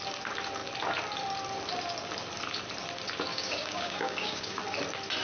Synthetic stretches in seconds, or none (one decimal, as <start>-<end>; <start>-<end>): 3.3-4.6